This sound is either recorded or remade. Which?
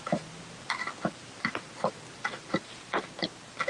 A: recorded